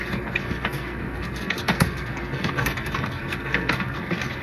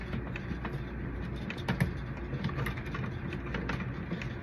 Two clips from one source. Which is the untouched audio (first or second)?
second